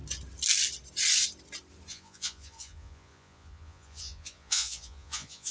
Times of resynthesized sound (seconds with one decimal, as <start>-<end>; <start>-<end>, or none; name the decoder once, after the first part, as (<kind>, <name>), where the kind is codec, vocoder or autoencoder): 1.9-5.5 (vocoder, Vocos)